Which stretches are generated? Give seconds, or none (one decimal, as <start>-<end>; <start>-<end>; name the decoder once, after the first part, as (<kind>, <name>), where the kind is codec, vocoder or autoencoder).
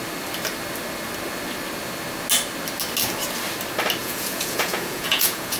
4.0-5.6 (vocoder, Vocos)